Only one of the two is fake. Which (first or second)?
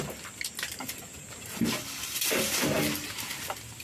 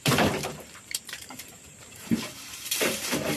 second